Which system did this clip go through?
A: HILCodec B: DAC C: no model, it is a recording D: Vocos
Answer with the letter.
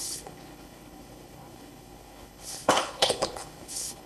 A